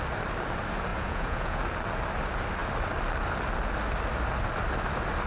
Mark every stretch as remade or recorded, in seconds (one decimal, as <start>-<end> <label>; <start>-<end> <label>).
0.0-0.9 recorded; 0.9-1.6 remade; 1.6-5.3 recorded

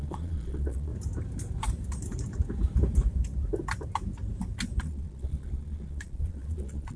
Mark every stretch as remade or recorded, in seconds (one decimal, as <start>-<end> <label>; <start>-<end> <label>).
0.0-0.9 remade; 0.9-4.8 recorded; 4.8-7.0 remade

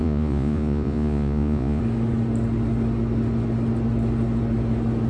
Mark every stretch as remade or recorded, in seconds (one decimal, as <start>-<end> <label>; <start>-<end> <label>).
0.0-1.8 remade; 1.8-5.1 recorded